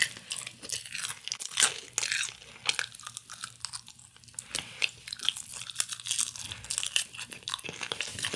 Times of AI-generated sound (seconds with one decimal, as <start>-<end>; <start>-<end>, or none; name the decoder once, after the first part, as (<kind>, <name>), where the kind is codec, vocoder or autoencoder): none

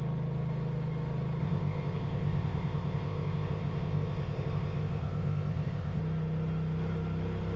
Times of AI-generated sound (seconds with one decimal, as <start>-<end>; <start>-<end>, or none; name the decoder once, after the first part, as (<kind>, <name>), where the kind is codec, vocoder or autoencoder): 1.4-6.0 (codec, ZipCodec)